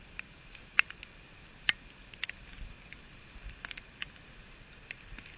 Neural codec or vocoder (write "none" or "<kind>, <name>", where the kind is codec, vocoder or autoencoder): none